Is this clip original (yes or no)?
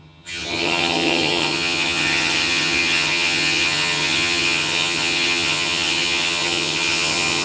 no